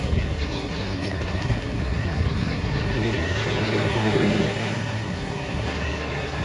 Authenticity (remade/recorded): remade